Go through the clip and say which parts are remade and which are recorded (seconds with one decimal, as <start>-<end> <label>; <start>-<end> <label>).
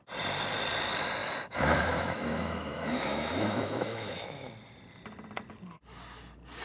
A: 0.0-1.2 recorded; 1.2-4.5 remade; 4.5-6.6 recorded